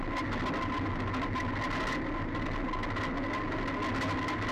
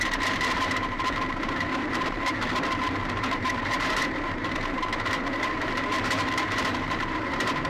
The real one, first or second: first